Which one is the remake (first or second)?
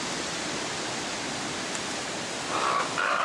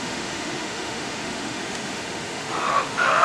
second